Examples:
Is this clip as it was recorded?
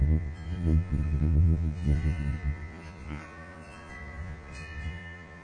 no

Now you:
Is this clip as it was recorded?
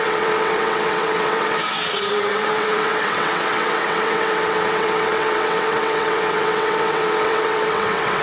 no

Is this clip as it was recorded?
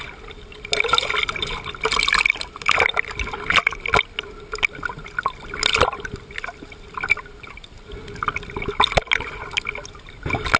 yes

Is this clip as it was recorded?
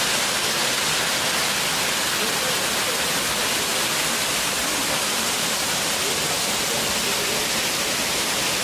yes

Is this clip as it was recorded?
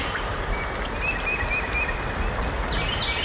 yes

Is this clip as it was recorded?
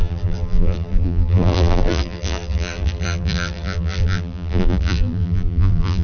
no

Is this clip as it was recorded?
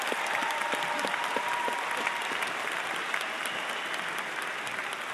yes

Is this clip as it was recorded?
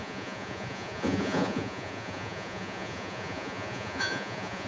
no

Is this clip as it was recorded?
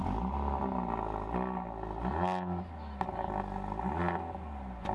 yes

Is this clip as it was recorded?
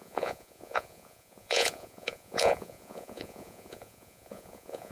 no